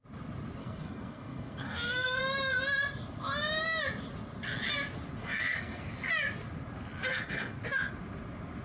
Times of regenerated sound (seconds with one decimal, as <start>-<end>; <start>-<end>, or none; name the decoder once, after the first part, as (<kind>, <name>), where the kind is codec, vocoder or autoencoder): 0.6-2.2 (codec, SNAC); 5.2-5.9; 7.1-7.6